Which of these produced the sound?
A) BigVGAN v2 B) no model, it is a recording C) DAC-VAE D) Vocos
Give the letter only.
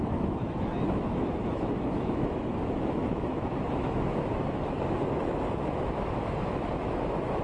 C